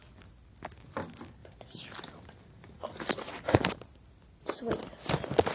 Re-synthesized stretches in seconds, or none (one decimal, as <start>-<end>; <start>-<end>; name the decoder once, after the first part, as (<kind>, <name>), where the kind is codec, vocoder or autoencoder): none